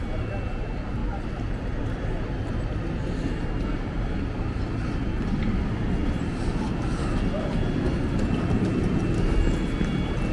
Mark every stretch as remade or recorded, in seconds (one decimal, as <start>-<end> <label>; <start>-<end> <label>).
0.0-10.3 recorded